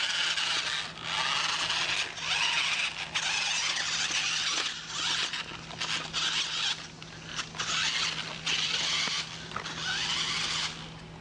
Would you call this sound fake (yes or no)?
no